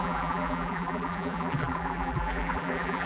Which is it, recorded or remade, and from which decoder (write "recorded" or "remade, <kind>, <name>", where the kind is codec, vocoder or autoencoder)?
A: remade, vocoder, BigVGAN v2